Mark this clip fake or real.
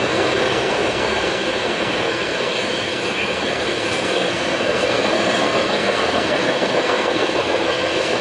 fake